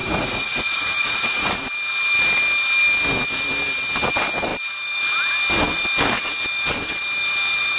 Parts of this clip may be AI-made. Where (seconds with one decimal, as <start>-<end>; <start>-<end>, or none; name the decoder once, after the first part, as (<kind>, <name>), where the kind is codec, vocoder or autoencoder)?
0.0-1.5 (vocoder, Vocos)